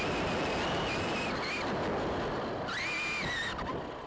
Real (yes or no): yes